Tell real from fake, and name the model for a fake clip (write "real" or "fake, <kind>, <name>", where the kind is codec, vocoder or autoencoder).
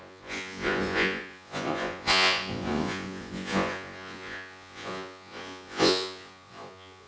fake, vocoder, Vocos